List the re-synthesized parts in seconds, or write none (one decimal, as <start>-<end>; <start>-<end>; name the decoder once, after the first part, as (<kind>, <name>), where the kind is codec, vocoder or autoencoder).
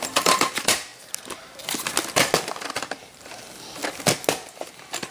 0.0-0.9 (vocoder, BigVGAN v2); 2.7-3.8; 4.5-5.1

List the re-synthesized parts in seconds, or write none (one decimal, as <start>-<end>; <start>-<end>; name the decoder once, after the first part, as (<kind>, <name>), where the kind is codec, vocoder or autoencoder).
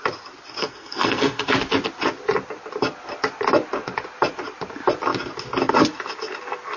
0.6-1.5 (codec, SNAC)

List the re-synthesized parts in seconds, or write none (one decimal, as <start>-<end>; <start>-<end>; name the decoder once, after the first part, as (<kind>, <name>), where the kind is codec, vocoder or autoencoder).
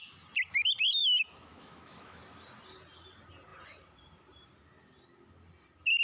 1.0-2.2 (autoencoder, DAC-VAE)